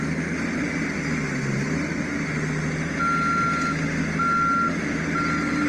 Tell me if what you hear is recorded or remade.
recorded